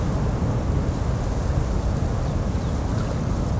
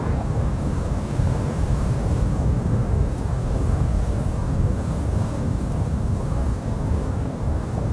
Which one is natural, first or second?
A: first